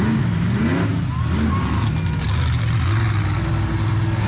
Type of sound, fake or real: real